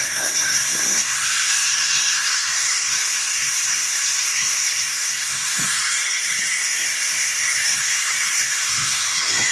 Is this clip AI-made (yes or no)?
yes